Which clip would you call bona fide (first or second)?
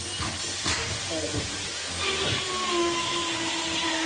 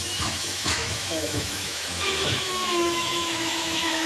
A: first